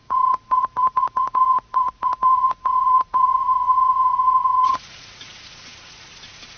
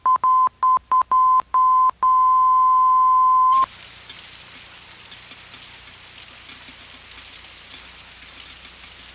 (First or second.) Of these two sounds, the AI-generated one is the first